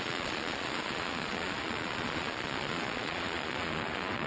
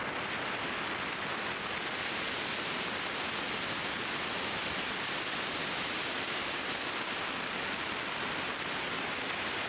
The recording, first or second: second